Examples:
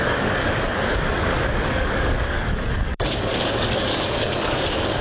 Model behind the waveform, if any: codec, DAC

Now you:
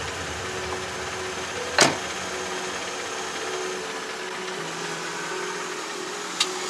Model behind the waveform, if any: none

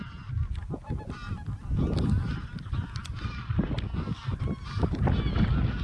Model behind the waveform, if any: none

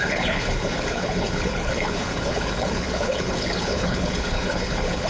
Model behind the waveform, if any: codec, HILCodec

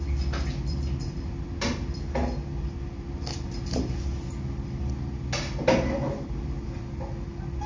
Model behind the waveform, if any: none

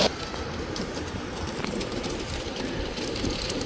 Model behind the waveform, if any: vocoder, BigVGAN v2